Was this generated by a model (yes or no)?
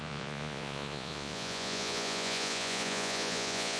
yes